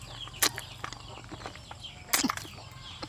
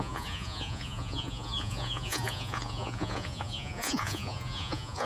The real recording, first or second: first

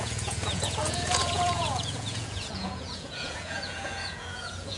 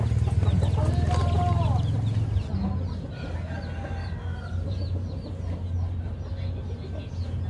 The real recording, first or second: second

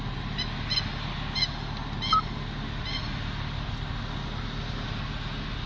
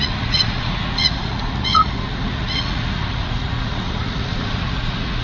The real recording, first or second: first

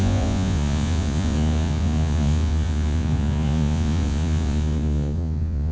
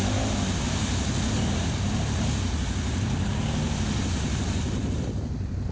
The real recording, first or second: second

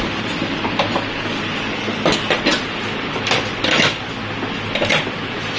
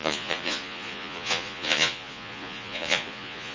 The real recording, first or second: first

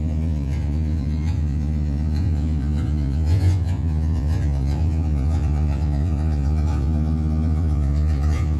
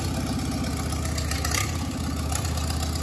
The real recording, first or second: second